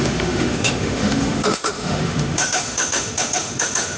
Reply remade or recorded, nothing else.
remade